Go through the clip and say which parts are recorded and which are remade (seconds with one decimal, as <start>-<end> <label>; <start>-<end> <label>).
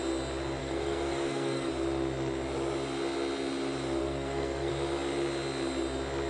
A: 0.0-0.6 recorded; 0.6-1.7 remade; 1.7-4.0 recorded; 4.0-4.7 remade; 4.7-6.3 recorded